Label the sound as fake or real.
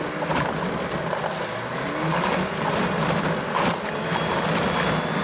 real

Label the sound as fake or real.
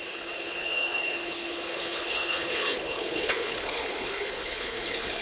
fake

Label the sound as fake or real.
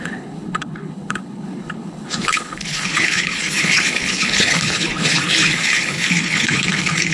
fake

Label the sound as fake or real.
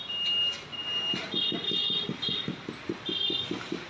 real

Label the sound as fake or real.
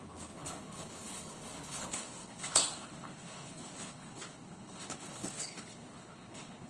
fake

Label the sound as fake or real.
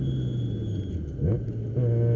real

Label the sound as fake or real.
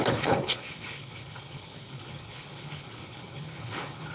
fake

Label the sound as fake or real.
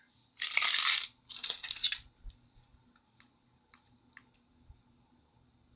real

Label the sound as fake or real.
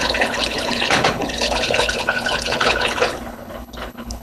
fake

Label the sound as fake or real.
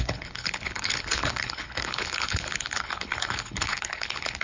fake